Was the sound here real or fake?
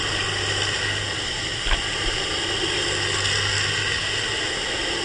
fake